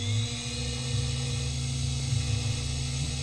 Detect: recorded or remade recorded